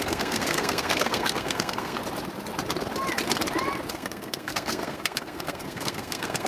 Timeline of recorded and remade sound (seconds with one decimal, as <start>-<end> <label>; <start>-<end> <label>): 0.0-2.0 remade; 2.0-3.9 recorded; 3.9-6.5 remade